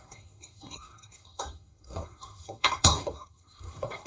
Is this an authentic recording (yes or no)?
no